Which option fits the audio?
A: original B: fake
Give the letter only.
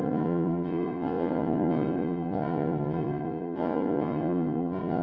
B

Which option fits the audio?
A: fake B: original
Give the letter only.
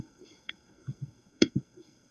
A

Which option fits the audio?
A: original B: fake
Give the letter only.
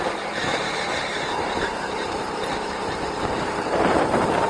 B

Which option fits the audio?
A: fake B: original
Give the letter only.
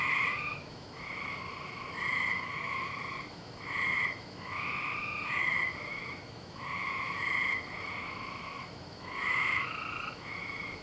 A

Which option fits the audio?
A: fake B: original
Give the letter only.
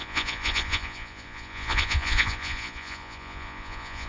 A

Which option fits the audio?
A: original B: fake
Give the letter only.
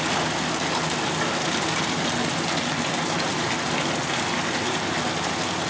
A